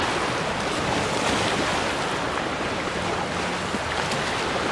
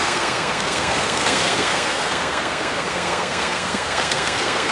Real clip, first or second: first